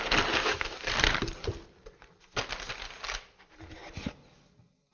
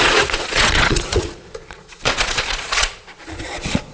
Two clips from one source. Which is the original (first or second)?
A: first